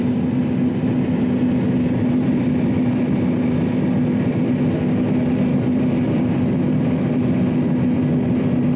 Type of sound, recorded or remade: recorded